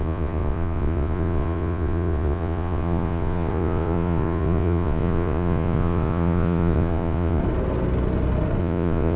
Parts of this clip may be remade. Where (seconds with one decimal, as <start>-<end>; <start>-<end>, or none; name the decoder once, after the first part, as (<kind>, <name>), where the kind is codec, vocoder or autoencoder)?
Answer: 0.0-7.4 (vocoder, Vocos); 8.6-9.2